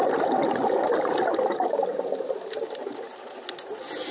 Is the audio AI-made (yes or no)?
no